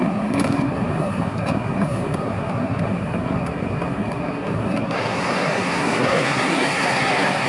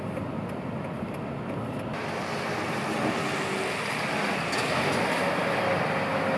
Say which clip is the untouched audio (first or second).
second